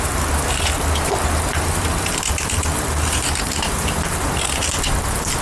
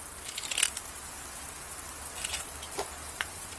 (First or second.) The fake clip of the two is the first